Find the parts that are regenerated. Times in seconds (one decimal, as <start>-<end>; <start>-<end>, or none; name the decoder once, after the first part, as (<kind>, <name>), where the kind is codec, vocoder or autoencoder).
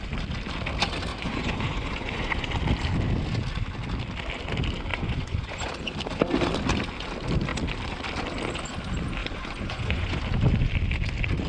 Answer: 1.1-2.5 (vocoder, Vocos); 4.9-5.7; 9.2-10.2